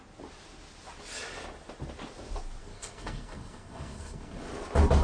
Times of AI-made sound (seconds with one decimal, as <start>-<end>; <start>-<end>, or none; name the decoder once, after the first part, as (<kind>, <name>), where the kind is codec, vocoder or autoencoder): 2.6-4.5 (codec, SNAC)